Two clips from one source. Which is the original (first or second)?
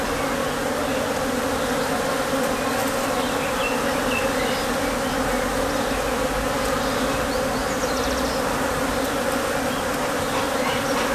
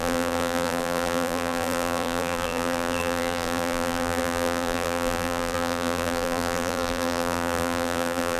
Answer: first